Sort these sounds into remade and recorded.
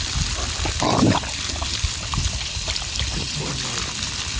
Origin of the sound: recorded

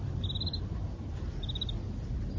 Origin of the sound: recorded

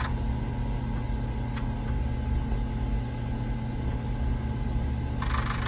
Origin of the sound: recorded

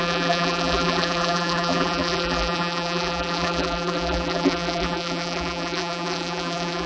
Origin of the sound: remade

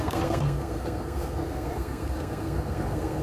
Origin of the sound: remade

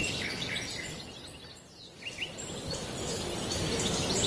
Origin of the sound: recorded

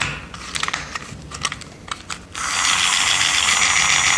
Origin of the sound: recorded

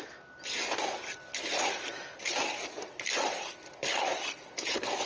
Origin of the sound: recorded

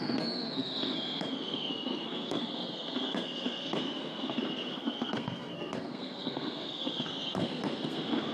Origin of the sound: remade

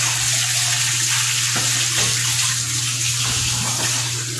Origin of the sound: recorded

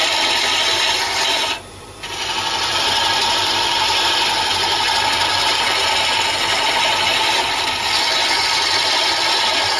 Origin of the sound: remade